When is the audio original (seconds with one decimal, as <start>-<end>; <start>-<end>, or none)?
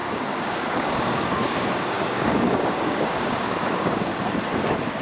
4.1-5.0